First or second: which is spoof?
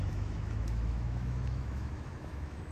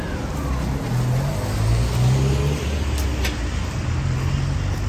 first